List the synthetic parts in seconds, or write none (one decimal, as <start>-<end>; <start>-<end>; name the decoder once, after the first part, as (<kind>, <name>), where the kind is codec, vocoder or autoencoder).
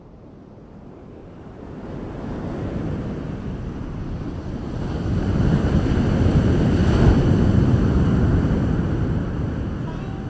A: 1.2-3.7 (vocoder, BigVGAN v2); 6.8-8.2